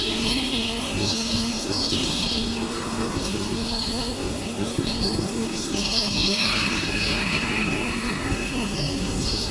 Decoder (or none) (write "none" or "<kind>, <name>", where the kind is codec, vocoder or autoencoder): codec, SNAC